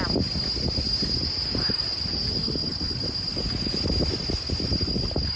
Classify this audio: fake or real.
real